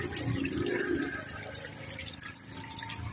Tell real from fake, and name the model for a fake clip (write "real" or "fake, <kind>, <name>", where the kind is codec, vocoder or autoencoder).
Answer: real